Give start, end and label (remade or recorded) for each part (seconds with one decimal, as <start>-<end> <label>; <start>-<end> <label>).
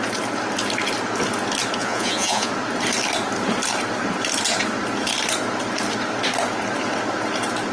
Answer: 0.0-1.8 recorded; 1.8-2.5 remade; 2.5-7.7 recorded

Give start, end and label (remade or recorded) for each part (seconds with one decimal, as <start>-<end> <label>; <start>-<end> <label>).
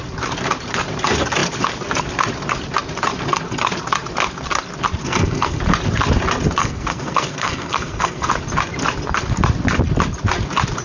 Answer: 0.0-5.0 recorded; 5.0-5.6 remade; 5.6-6.6 recorded; 6.6-8.3 remade; 8.3-10.8 recorded